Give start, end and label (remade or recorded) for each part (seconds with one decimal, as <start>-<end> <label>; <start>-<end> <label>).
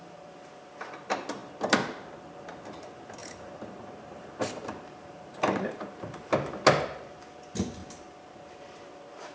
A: 0.0-3.2 recorded; 3.2-6.3 remade; 6.3-7.8 recorded; 7.8-8.4 remade; 8.4-9.3 recorded